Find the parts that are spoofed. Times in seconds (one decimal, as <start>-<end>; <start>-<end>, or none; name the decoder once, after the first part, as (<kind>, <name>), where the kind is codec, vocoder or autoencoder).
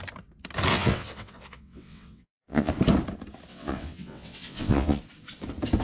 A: 0.7-2.7 (vocoder, WaveNeXt); 3.5-5.0